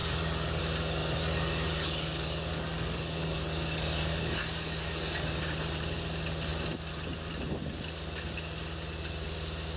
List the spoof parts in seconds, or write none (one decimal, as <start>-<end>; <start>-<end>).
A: 0.0-0.6; 1.0-5.4